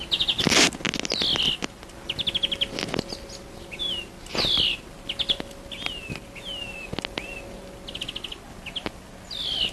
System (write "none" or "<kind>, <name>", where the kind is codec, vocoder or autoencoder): none